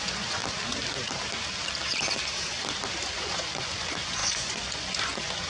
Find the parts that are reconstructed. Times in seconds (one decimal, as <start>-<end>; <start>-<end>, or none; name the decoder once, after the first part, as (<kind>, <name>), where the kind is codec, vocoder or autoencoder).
0.0-0.4 (vocoder, Vocos); 3.1-5.5